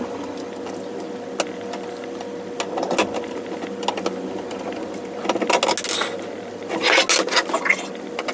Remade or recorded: recorded